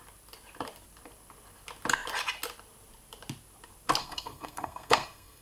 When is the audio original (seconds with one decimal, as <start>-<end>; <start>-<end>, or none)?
0.0-4.0